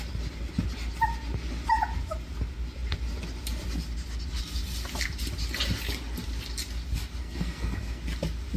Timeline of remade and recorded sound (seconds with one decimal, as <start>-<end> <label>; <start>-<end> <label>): 0.0-7.2 recorded; 7.2-8.0 remade; 8.0-8.6 recorded